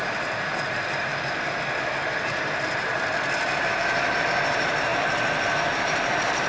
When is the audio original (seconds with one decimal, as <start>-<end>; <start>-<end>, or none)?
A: 1.1-2.0; 2.9-3.6

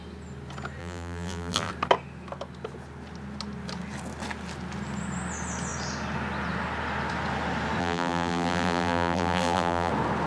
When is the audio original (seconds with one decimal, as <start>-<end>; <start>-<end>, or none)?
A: 0.0-0.8; 1.7-7.8; 9.9-10.3

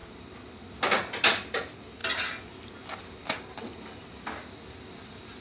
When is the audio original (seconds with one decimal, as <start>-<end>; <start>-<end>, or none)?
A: 0.0-3.2; 4.0-5.4

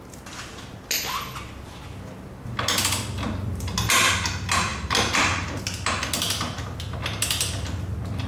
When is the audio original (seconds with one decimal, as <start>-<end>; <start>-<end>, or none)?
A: 0.0-4.7; 5.6-8.3